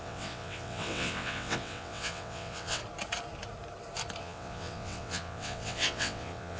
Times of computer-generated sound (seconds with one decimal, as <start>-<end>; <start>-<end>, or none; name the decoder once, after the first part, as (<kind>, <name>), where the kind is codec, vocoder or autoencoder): 0.0-2.8 (vocoder, WaveNeXt); 4.2-6.6